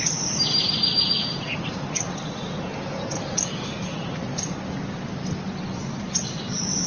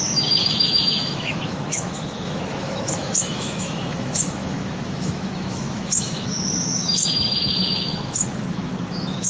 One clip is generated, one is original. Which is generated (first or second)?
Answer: second